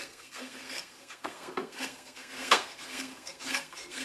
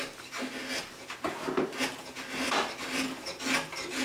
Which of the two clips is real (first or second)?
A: second